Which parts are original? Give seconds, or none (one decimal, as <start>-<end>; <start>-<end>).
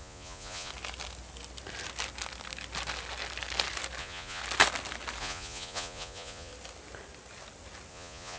0.7-4.0; 4.4-5.2; 6.5-7.9